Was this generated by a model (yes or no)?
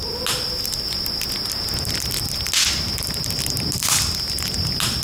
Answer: no